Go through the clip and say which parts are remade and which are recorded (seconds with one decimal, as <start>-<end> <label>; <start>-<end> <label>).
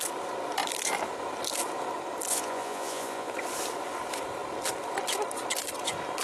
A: 0.0-2.3 recorded; 2.3-3.3 remade; 3.3-6.2 recorded